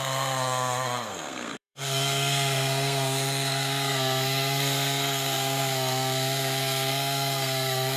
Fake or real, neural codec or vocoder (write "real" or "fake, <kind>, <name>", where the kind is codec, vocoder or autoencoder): fake, codec, SNAC